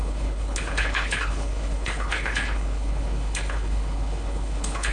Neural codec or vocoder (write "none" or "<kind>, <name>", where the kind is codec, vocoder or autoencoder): codec, HILCodec